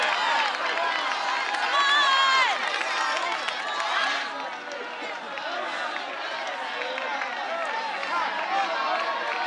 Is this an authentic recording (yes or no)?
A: yes